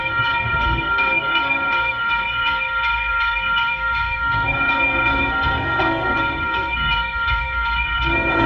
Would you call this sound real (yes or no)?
no